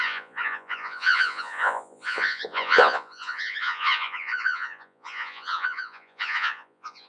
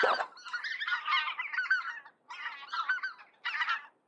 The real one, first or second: second